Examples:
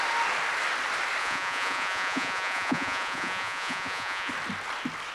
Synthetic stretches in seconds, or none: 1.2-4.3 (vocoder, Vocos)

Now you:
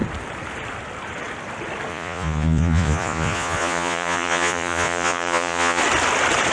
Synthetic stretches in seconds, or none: 1.9-5.8 (vocoder, Vocos)